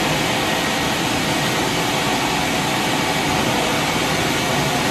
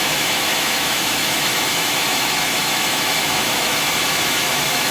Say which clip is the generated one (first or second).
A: second